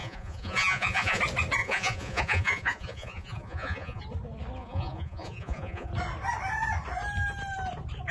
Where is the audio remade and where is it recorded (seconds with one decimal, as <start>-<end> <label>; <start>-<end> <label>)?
0.0-1.2 remade; 1.2-1.6 recorded; 1.6-4.0 remade; 4.0-4.6 recorded; 4.6-5.9 remade; 5.9-8.1 recorded